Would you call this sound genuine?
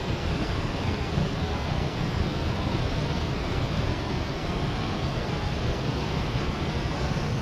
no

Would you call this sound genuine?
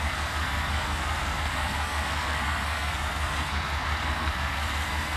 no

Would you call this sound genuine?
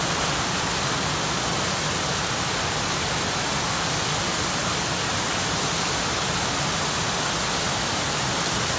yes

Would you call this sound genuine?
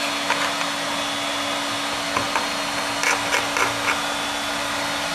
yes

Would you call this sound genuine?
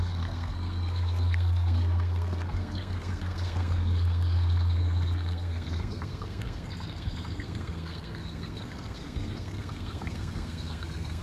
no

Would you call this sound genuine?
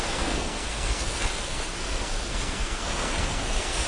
no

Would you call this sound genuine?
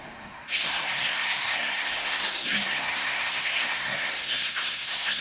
no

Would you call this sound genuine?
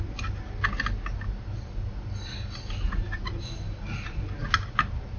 yes